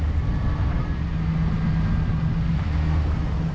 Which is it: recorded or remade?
recorded